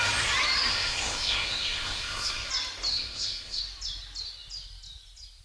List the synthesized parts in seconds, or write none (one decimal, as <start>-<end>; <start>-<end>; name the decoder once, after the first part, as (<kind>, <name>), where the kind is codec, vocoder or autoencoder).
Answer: 0.7-2.5 (codec, SNAC); 2.9-3.6